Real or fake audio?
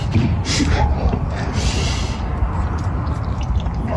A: real